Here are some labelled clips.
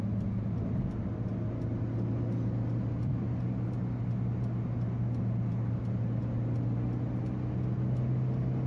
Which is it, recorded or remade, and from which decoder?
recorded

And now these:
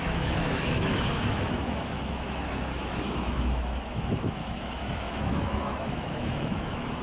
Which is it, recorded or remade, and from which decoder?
remade, autoencoder, DAC-VAE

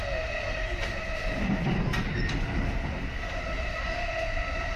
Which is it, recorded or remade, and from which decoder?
recorded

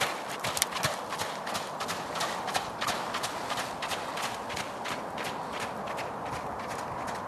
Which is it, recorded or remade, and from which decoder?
recorded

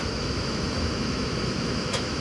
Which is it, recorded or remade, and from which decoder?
remade, autoencoder, DAC-VAE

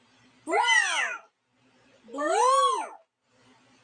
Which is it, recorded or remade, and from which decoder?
recorded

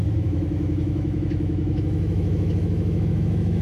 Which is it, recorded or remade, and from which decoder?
remade, autoencoder, DAC-VAE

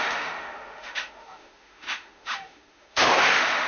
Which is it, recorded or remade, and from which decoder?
remade, autoencoder, DAC-VAE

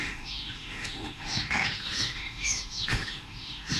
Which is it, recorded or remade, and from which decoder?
remade, autoencoder, DAC-VAE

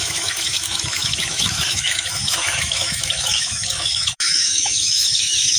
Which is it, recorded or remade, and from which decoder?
remade, autoencoder, DAC-VAE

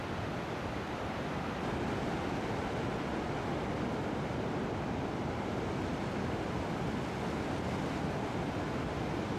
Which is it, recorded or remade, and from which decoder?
recorded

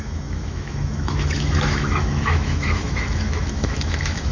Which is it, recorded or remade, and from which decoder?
remade, autoencoder, DAC-VAE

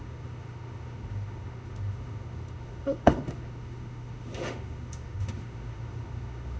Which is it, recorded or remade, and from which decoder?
remade, autoencoder, DAC-VAE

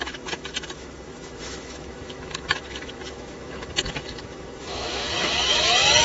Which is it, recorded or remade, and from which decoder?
remade, autoencoder, DAC-VAE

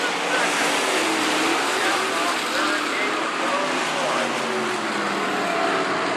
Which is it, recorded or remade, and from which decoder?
recorded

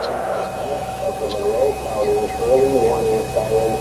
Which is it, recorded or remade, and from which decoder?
remade, autoencoder, DAC-VAE